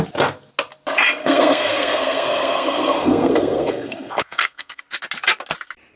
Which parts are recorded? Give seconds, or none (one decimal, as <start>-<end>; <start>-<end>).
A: 0.0-1.2; 4.8-6.0